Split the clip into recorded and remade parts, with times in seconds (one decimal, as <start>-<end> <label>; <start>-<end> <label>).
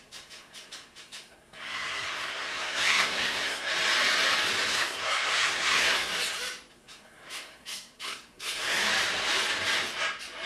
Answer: 0.0-3.7 remade; 3.7-4.7 recorded; 4.7-6.1 remade; 6.1-6.7 recorded; 6.7-8.9 remade; 8.9-10.5 recorded